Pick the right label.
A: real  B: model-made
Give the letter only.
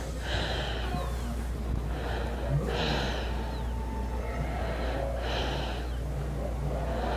A